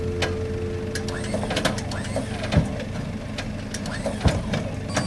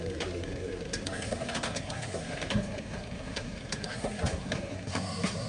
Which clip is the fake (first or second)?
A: second